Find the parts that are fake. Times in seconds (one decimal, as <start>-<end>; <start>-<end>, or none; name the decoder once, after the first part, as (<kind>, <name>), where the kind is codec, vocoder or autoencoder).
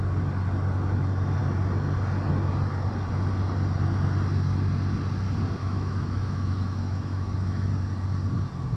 5.6-7.7 (autoencoder, DAC-VAE)